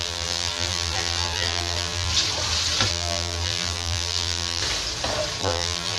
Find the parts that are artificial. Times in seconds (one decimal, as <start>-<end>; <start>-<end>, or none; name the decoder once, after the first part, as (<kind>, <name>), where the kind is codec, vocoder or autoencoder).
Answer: 0.0-2.1 (vocoder, BigVGAN v2); 2.9-4.6; 5.4-6.0